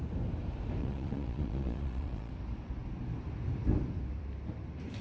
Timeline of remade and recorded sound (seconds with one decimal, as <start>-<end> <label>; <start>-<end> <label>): 0.0-0.8 recorded; 0.8-2.3 remade; 2.3-5.0 recorded